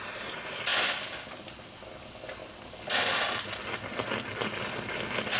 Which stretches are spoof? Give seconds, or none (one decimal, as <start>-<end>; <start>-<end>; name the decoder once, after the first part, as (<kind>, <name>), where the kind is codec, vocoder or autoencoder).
none